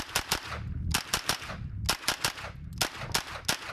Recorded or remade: recorded